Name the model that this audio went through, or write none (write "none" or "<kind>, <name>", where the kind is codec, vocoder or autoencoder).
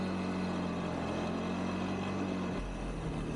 none